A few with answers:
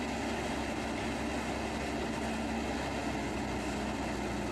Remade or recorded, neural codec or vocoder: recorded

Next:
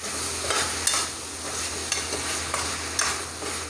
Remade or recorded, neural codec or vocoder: recorded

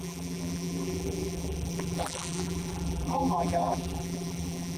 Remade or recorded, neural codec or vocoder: remade, vocoder, BigVGAN v2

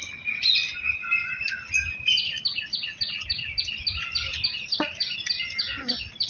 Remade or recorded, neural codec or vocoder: recorded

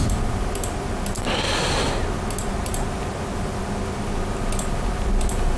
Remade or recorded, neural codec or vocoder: recorded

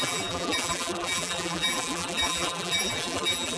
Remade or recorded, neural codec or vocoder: remade, vocoder, BigVGAN v2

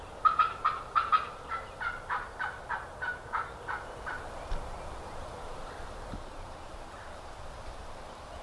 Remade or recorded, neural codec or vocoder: remade, vocoder, BigVGAN v2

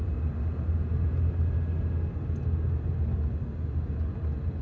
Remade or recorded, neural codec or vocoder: recorded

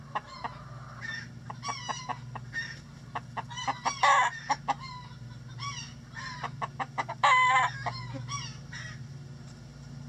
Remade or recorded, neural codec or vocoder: recorded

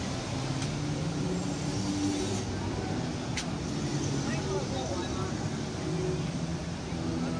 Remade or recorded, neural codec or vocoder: recorded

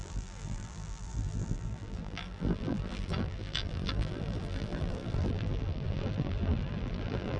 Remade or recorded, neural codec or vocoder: remade, vocoder, BigVGAN v2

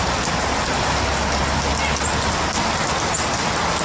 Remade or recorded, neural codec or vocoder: recorded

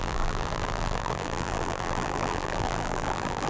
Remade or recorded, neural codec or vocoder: remade, vocoder, BigVGAN v2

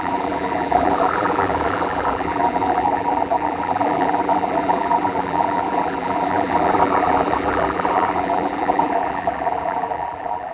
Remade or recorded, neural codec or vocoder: remade, vocoder, BigVGAN v2